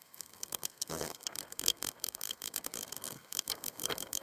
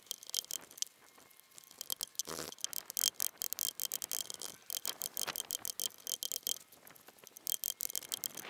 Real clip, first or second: second